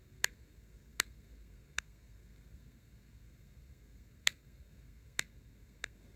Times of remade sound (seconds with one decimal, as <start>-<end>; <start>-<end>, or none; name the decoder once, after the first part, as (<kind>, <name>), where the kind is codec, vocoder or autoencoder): 0.0-6.2 (codec, SNAC)